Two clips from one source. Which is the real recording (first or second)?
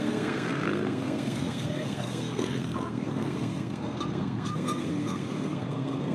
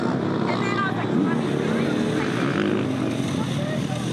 second